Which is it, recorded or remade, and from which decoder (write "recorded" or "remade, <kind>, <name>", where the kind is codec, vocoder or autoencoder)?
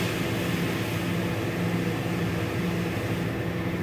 recorded